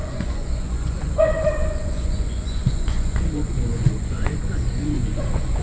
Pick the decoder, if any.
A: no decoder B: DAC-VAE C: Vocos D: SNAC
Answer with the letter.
C